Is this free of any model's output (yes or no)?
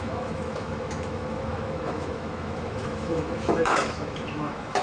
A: no